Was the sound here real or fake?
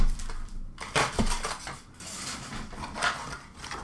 real